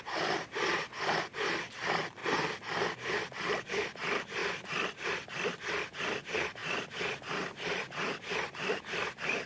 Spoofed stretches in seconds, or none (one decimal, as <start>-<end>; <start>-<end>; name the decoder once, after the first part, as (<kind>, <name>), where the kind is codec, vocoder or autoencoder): none